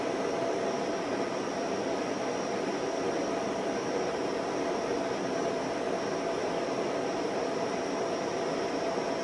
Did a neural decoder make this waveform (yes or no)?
no